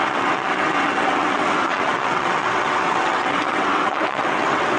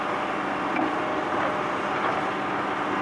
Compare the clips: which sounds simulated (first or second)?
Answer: first